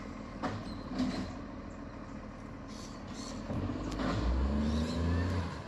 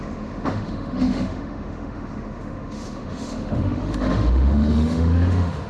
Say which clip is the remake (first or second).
second